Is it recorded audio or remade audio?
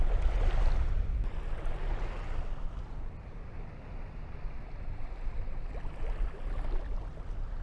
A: recorded